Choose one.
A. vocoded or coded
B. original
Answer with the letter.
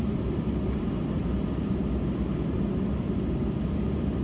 B